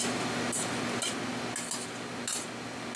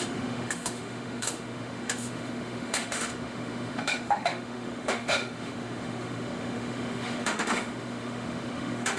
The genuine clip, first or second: first